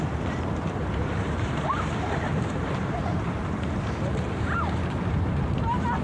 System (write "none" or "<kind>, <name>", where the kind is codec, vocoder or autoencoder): vocoder, BigVGAN v2